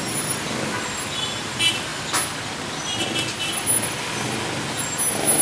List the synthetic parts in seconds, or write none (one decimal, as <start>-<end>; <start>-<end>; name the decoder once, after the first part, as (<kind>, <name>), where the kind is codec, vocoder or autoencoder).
none